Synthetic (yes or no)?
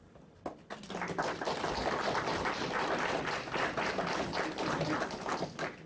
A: no